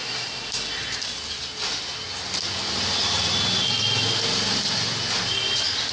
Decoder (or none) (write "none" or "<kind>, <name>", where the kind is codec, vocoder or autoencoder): none